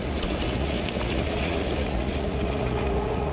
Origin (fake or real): fake